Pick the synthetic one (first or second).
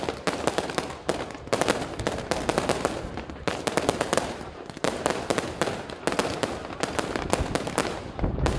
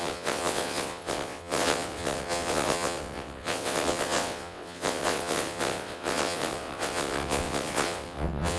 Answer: second